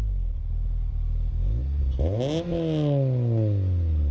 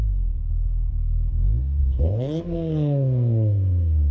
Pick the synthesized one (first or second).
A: second